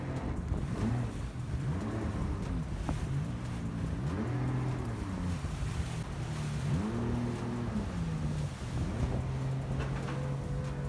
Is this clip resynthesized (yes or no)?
no